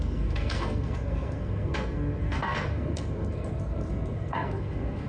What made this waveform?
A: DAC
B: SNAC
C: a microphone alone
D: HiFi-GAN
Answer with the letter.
B